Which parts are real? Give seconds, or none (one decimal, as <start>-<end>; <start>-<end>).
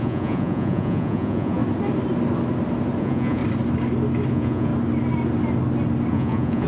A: 1.6-3.0; 3.4-4.3; 4.7-6.1